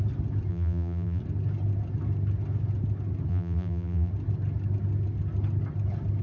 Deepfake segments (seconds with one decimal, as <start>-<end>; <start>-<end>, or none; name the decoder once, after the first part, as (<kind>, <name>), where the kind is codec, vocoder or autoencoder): 0.5-1.2 (vocoder, BigVGAN v2); 3.3-4.1